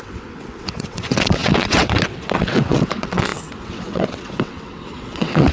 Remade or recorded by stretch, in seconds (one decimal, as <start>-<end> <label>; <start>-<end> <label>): 0.0-5.5 remade

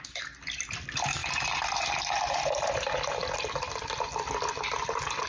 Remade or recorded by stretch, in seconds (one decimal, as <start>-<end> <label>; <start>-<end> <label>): 0.0-5.3 recorded

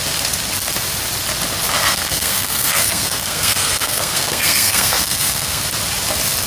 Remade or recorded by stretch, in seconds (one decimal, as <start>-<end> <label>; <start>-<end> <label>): 0.0-1.8 recorded; 1.8-5.6 remade; 5.6-6.5 recorded

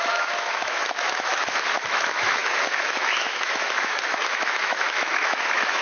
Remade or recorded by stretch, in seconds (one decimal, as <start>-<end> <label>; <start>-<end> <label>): 0.0-5.8 remade

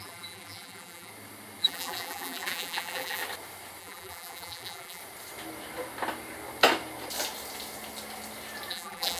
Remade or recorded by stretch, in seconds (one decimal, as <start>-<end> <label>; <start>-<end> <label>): 0.0-1.1 remade; 1.1-1.6 recorded; 1.6-3.2 remade; 3.2-3.8 recorded; 3.8-5.0 remade; 5.0-8.7 recorded; 8.7-9.2 remade

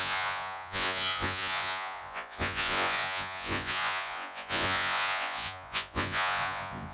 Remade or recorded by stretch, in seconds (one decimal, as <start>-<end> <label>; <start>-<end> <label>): 0.0-6.9 remade

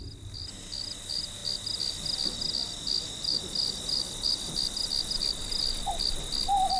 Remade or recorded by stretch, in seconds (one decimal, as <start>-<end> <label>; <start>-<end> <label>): 0.0-6.8 recorded

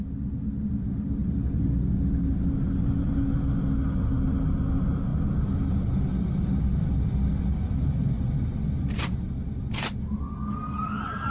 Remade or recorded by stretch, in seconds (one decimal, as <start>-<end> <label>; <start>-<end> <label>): 0.0-11.3 recorded